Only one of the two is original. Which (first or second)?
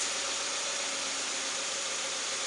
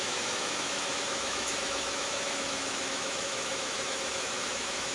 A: first